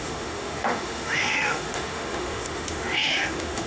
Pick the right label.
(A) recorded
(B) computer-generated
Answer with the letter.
B